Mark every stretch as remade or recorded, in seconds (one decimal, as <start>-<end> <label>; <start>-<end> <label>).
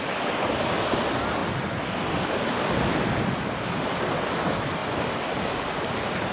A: 0.0-6.3 recorded